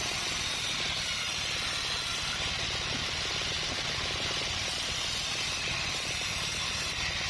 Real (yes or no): yes